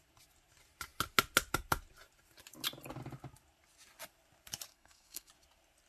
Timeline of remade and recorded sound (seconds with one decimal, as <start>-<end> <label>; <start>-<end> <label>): 0.0-4.7 recorded; 4.7-5.3 remade; 5.3-5.9 recorded